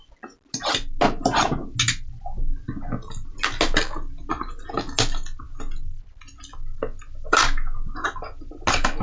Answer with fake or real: real